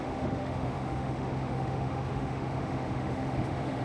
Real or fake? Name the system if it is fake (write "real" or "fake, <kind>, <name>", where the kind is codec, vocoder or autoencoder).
fake, autoencoder, DAC-VAE